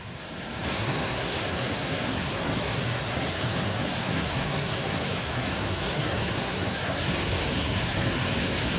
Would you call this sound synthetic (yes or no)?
yes